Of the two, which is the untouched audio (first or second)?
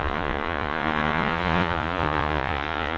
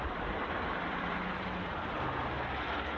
second